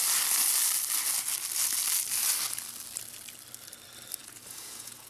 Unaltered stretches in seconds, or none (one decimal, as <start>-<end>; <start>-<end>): 0.0-4.2